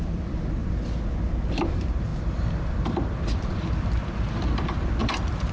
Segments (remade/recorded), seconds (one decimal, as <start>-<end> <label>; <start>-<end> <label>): 0.0-0.6 remade; 0.6-1.6 recorded; 1.6-5.5 remade